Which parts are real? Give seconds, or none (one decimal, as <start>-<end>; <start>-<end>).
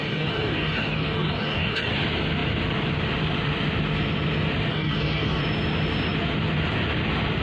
1.9-4.7; 5.4-7.4